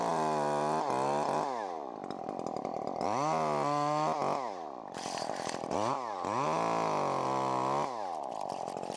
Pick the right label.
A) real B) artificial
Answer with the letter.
A